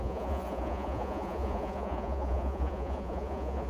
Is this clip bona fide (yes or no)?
no